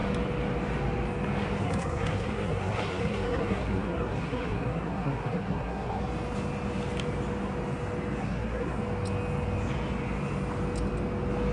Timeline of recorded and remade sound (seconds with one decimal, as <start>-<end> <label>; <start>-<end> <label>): 0.0-1.6 recorded; 1.6-6.0 remade; 6.0-8.2 recorded; 8.2-8.8 remade; 8.8-11.5 recorded